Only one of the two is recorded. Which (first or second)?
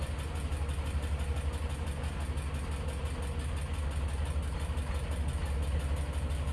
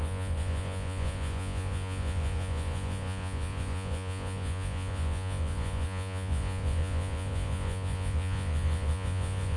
first